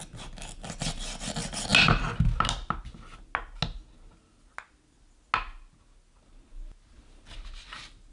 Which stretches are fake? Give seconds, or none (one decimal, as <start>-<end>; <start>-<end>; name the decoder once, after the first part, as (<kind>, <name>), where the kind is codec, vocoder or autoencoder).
none